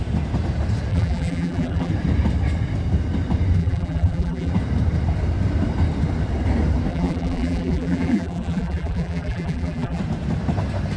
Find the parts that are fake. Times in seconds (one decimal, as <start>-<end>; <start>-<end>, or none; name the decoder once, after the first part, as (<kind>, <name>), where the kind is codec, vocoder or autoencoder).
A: 0.9-1.9 (vocoder, BigVGAN v2); 3.6-4.5; 6.9-10.0